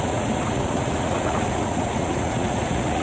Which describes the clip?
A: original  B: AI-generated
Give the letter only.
B